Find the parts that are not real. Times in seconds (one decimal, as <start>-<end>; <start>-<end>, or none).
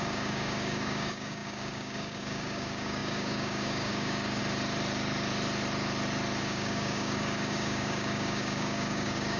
0.0-4.4; 6.4-9.4